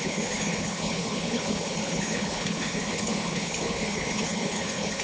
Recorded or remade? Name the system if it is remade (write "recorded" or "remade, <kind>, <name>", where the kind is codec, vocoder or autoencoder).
remade, codec, HILCodec